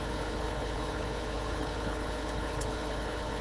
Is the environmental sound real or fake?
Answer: fake